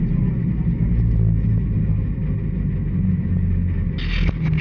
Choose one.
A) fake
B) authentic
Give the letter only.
B